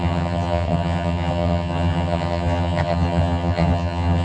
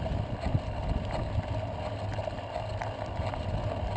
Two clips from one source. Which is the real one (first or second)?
second